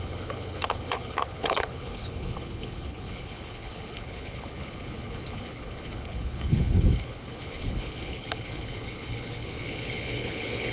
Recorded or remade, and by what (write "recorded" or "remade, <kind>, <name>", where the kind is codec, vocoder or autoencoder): remade, codec, HILCodec